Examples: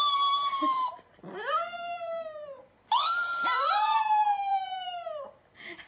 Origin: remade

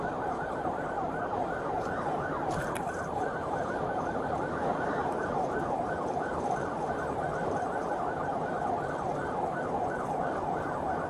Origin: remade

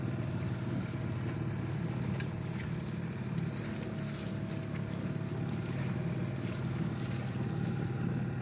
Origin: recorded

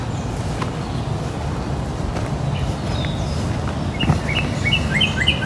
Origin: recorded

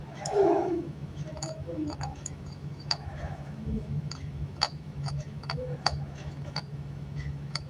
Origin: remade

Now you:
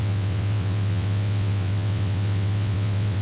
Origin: remade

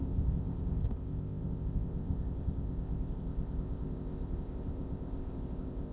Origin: remade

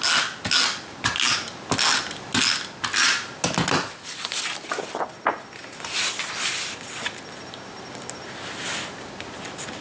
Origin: recorded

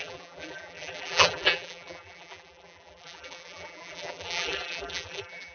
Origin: remade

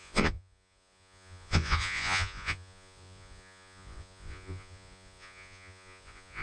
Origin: remade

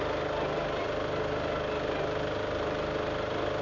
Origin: recorded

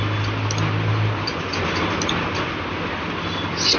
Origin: recorded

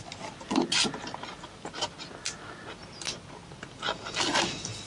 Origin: recorded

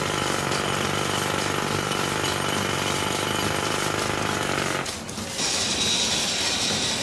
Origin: recorded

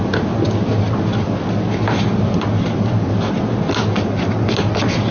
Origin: recorded